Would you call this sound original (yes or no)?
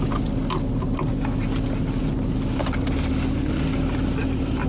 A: yes